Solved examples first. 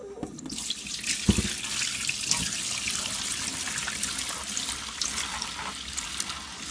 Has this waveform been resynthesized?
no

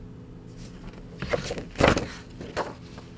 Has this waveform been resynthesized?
no